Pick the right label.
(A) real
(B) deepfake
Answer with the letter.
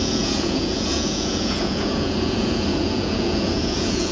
B